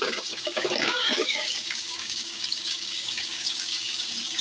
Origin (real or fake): fake